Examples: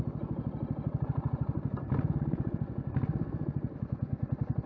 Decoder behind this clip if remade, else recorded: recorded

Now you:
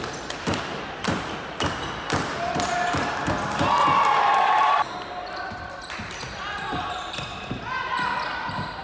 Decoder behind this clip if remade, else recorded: recorded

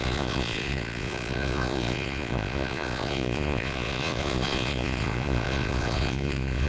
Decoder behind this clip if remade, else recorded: remade, vocoder, Vocos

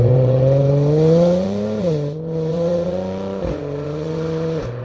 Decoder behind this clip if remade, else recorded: remade, vocoder, Vocos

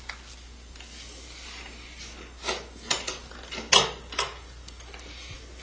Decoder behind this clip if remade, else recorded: recorded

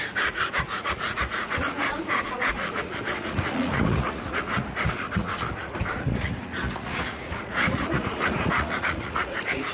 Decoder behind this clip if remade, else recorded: remade, vocoder, Vocos